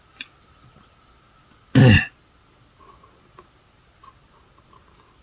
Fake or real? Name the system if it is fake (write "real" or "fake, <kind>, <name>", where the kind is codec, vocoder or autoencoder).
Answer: real